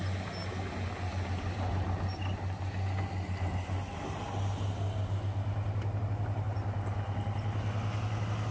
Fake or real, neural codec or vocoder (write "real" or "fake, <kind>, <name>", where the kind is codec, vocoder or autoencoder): real